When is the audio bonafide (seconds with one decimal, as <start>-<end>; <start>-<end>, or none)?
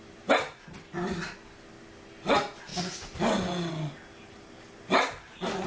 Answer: 0.0-5.7